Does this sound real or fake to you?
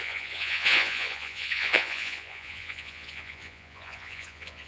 fake